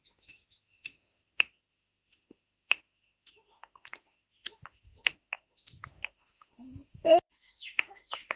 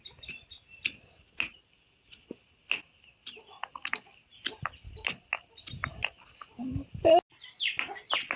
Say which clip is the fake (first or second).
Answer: first